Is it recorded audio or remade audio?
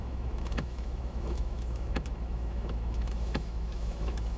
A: remade